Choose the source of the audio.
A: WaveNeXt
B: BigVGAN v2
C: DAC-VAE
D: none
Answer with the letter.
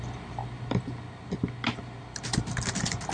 D